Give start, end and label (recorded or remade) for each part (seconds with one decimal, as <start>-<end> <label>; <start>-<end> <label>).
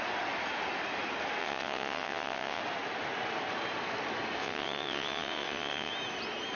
0.0-1.4 recorded; 1.4-2.6 remade; 2.6-4.4 recorded; 4.4-5.9 remade; 5.9-6.6 recorded